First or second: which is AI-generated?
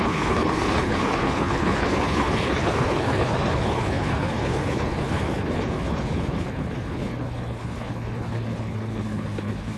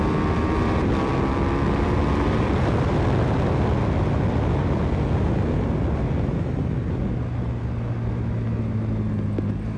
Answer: first